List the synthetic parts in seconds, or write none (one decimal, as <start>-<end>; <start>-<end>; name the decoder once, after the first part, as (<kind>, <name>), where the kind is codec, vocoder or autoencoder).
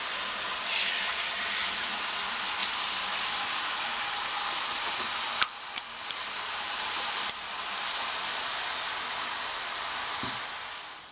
none